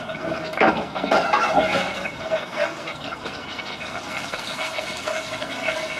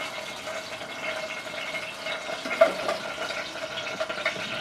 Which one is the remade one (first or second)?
first